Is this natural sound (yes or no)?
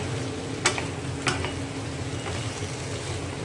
yes